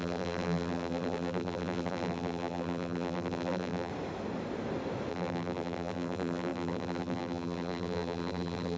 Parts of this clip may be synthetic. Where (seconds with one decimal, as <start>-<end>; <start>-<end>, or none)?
0.0-3.9; 5.1-8.8